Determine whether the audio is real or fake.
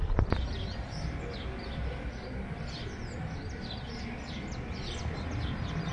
real